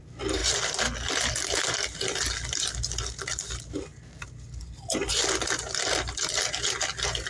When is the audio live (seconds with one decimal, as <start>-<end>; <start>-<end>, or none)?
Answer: 0.0-7.3